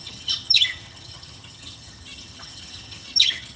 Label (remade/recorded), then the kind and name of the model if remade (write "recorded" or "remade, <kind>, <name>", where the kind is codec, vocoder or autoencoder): remade, vocoder, HiFi-GAN